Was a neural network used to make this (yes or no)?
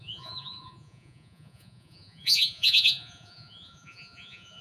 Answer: yes